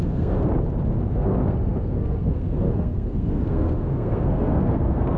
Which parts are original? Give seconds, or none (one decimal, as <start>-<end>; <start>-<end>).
0.5-1.1